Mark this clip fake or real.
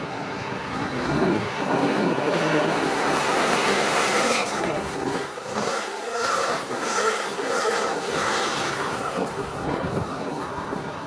fake